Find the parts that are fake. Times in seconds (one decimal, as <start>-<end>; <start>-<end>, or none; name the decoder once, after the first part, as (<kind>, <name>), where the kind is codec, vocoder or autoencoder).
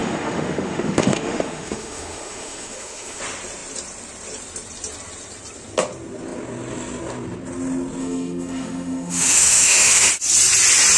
0.0-3.2 (autoencoder, DAC-VAE); 8.0-10.1